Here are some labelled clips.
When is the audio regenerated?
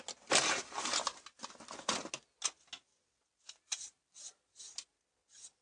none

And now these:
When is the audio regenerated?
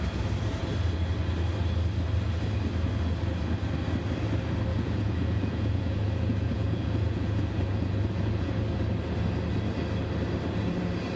4.7-8.5 (vocoder, Vocos)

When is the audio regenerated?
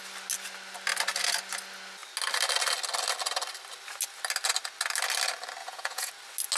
5.6-6.1 (vocoder, Vocos)